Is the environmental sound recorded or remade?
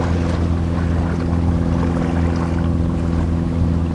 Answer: recorded